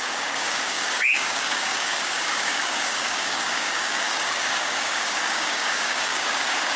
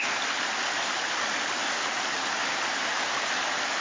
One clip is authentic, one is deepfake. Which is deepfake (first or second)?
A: first